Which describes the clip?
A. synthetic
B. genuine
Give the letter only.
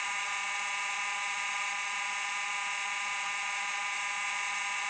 A